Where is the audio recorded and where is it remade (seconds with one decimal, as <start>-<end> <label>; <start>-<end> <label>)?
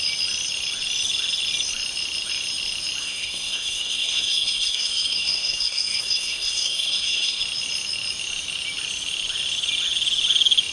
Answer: 0.0-3.0 recorded; 3.0-7.4 remade; 7.4-10.7 recorded